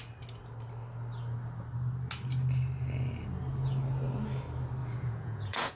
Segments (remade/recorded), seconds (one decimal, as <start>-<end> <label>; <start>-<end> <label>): 0.0-4.8 recorded; 4.8-5.8 remade